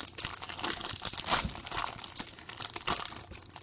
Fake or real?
fake